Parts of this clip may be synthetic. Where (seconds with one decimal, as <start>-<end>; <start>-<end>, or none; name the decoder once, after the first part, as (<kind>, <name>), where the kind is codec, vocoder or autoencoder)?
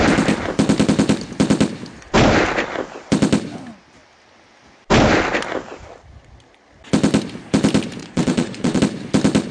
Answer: 8.0-8.8 (vocoder, Vocos)